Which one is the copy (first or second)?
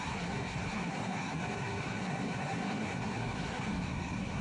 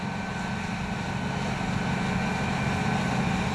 first